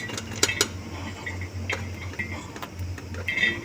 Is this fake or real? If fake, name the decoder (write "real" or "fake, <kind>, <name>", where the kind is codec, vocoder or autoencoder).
real